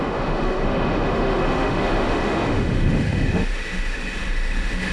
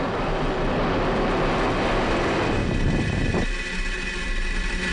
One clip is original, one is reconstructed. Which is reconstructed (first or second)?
first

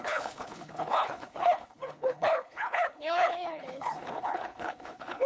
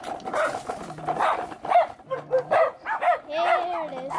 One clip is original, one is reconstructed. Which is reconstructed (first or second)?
first